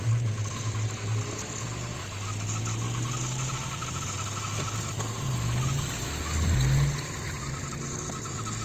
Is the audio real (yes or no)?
yes